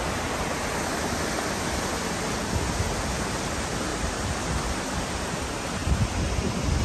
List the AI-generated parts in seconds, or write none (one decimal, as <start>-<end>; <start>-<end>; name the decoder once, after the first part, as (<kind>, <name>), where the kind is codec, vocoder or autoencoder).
3.9-5.2 (vocoder, BigVGAN v2)